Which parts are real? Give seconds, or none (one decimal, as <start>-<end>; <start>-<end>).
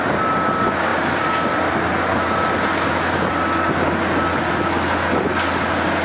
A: 0.0-6.0